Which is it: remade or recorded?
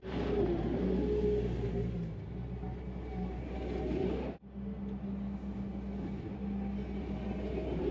recorded